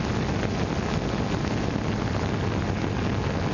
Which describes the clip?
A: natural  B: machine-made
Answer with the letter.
A